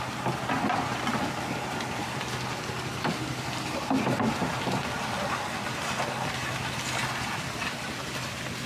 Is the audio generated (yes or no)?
no